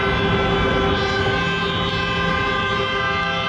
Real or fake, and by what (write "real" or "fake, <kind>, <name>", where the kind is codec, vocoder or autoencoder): real